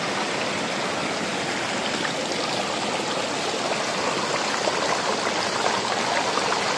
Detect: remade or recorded recorded